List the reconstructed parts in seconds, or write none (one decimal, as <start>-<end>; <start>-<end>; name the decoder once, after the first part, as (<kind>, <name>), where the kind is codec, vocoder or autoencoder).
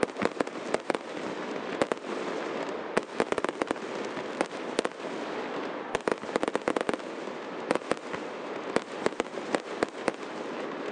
none